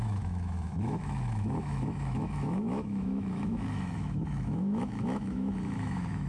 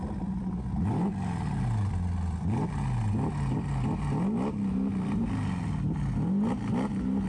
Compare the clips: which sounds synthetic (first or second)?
first